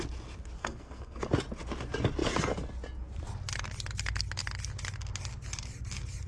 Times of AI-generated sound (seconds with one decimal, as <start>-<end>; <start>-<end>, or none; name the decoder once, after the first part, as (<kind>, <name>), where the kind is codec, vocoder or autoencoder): 0.6-1.2 (codec, SNAC)